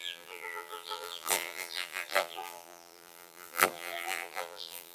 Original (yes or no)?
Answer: no